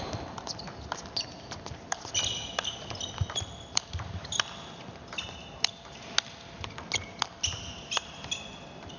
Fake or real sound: real